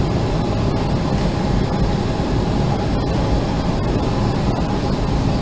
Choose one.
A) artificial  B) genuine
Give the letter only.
B